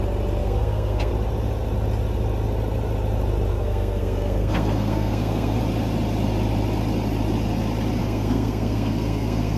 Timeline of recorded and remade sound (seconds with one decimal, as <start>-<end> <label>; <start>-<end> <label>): 0.0-0.4 recorded; 0.4-1.1 remade; 1.1-3.5 recorded; 3.5-5.6 remade; 5.6-8.0 recorded; 8.0-9.6 remade